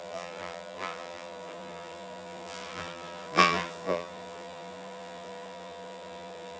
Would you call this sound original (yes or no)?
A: no